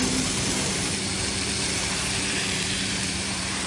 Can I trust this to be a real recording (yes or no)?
no